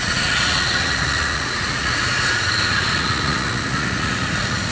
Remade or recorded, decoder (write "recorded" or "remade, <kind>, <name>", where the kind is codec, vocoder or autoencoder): remade, vocoder, Vocos